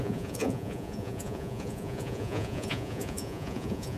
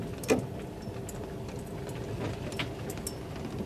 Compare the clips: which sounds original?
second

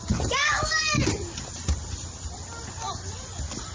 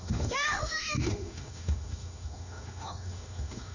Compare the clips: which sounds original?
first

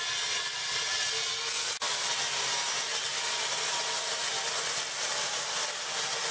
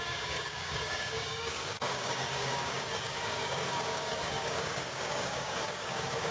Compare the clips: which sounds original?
first